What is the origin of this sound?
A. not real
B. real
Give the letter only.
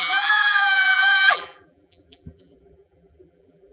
A